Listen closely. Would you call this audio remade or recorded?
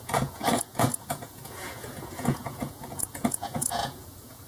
remade